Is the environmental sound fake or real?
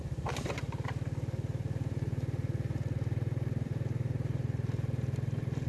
fake